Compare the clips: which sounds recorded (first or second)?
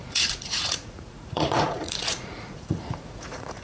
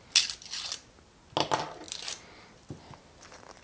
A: second